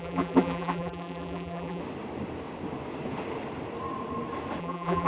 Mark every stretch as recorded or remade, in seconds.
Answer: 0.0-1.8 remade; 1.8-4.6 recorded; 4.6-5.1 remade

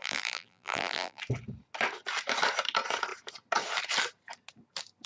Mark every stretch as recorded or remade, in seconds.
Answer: 0.0-1.2 remade; 1.2-5.1 recorded

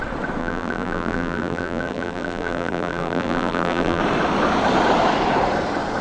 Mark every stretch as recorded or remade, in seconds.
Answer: 0.0-0.4 recorded; 0.4-4.0 remade; 4.0-6.0 recorded

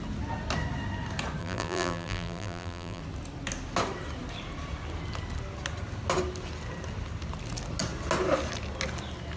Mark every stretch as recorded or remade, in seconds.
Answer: 0.0-1.4 recorded; 1.4-3.0 remade; 3.0-9.4 recorded

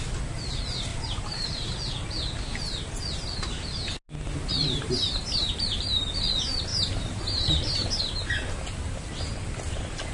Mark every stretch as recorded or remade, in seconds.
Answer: 0.0-0.9 recorded; 0.9-1.7 remade; 1.7-4.5 recorded; 4.5-6.0 remade; 6.0-6.7 recorded; 6.7-8.0 remade; 8.0-10.1 recorded

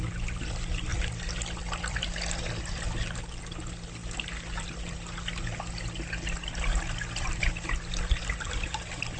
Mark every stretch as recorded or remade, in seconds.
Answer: 0.0-9.2 recorded

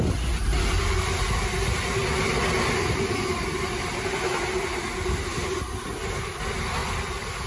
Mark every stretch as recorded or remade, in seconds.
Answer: 0.0-6.8 recorded; 6.8-7.5 remade